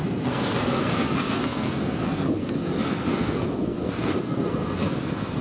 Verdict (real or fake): fake